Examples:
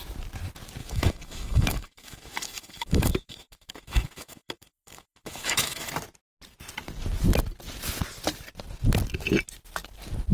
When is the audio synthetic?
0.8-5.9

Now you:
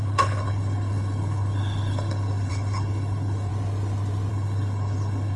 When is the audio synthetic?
0.0-3.5; 4.3-5.4